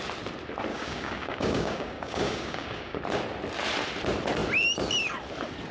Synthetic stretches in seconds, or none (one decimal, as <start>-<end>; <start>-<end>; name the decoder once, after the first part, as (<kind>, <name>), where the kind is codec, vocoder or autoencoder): 0.7-3.0 (codec, DAC)